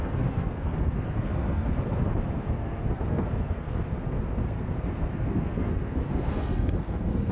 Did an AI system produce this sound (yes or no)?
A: yes